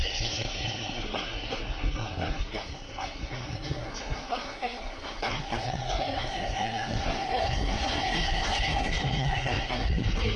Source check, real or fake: fake